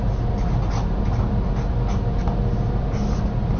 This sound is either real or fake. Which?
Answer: real